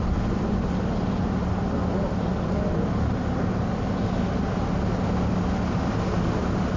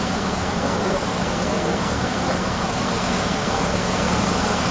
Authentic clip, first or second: first